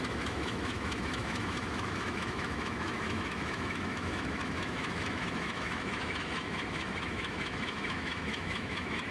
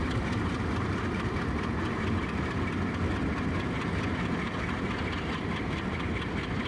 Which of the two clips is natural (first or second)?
second